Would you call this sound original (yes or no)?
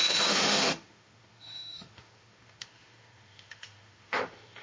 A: no